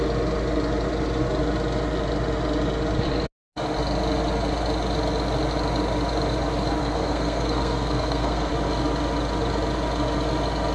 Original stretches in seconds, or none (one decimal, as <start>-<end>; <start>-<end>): 0.0-6.8; 8.5-10.7